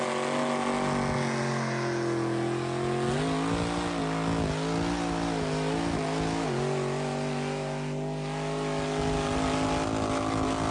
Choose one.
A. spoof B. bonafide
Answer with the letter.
B